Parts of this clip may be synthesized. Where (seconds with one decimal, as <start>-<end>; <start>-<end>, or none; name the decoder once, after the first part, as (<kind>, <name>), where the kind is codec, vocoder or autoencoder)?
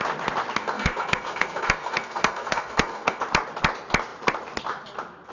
0.6-3.2 (codec, SNAC)